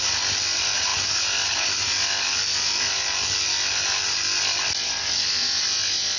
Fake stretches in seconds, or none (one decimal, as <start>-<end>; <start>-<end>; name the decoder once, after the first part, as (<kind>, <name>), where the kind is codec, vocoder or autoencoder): none